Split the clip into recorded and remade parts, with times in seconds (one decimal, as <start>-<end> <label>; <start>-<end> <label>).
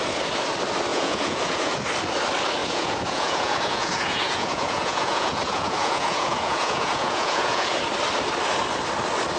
0.0-0.9 recorded; 0.9-1.8 remade; 1.8-2.6 recorded; 2.6-7.8 remade; 7.8-9.4 recorded